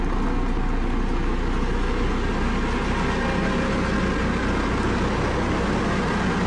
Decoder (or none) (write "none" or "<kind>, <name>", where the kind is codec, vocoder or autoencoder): none